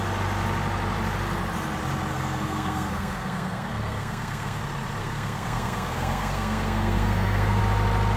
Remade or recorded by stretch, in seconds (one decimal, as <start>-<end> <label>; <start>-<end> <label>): 0.0-2.1 recorded; 2.1-4.6 remade; 4.6-5.0 recorded; 5.0-7.6 remade; 7.6-8.2 recorded

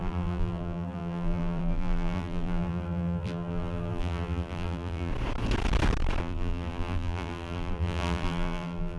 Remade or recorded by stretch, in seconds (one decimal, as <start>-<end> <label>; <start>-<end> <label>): 0.0-5.1 remade; 5.1-6.2 recorded; 6.2-9.0 remade

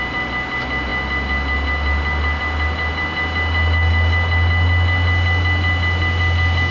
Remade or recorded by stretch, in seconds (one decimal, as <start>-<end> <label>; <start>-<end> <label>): 0.0-6.7 recorded

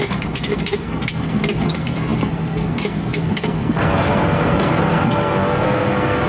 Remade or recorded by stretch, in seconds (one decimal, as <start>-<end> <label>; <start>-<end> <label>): 0.0-6.3 remade

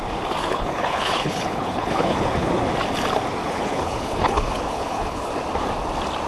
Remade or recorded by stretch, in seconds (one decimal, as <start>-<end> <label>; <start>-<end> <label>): 0.0-0.4 recorded; 0.4-2.5 remade; 2.5-3.4 recorded; 3.4-5.3 remade; 5.3-6.3 recorded